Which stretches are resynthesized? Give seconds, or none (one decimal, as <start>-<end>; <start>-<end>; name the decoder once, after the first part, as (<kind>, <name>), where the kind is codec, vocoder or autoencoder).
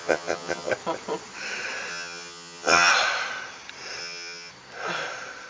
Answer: 0.0-0.7 (vocoder, HiFi-GAN); 1.9-2.9; 4.0-4.5